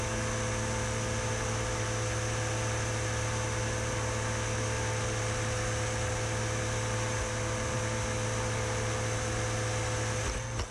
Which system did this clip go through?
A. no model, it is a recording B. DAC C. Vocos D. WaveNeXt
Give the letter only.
A